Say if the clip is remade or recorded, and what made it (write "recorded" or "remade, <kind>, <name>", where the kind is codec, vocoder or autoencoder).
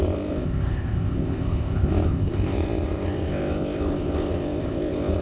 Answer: remade, codec, ZipCodec